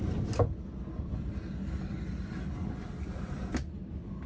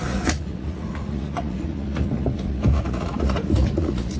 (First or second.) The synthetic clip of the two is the second